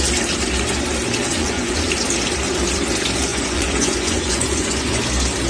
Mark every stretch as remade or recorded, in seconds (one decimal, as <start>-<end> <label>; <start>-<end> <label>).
0.0-1.3 recorded; 1.3-1.9 remade; 1.9-3.3 recorded; 3.3-5.0 remade; 5.0-5.5 recorded